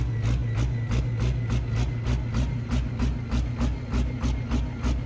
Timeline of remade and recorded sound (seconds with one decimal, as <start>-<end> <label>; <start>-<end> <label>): 0.0-5.1 recorded